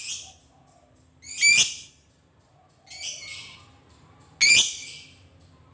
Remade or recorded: recorded